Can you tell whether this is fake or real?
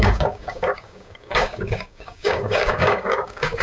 fake